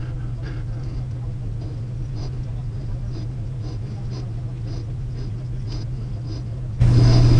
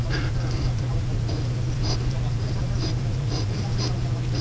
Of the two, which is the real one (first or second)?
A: first